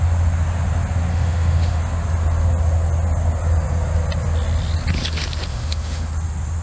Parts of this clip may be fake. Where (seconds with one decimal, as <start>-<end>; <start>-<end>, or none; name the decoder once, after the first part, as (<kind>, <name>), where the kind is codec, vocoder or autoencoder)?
1.1-1.8 (autoencoder, DAC-VAE); 5.5-6.1

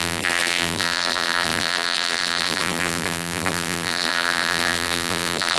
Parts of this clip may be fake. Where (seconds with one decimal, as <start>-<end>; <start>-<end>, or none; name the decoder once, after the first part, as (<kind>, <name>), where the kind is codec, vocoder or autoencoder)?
0.0-5.6 (vocoder, BigVGAN v2)

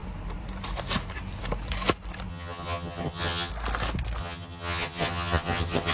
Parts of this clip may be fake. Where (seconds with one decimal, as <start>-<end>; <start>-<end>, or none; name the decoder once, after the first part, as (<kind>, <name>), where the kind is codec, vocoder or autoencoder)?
2.3-3.5 (vocoder, HiFi-GAN); 4.2-5.9

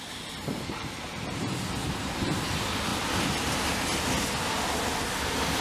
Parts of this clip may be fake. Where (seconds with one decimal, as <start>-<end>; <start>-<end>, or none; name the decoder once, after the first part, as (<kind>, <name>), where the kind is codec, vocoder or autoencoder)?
none

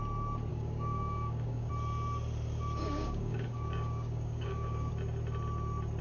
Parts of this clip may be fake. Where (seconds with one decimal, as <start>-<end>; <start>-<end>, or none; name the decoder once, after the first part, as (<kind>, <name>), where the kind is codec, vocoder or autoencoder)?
0.5-1.7 (codec, DAC); 2.8-4.9

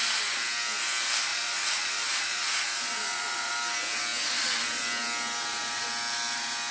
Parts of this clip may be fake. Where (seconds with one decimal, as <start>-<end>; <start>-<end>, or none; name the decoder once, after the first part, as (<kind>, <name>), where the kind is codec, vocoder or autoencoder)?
1.3-3.5 (vocoder, Vocos)